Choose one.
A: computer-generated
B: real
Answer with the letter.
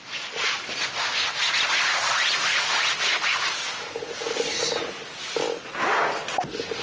B